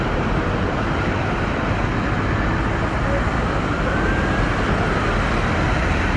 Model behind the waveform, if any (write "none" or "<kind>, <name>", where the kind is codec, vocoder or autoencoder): none